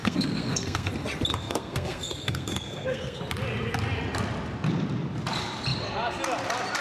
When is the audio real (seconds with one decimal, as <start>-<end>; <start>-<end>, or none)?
0.9-1.3; 3.2-6.8